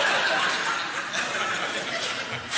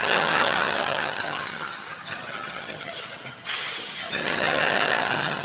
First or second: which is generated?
second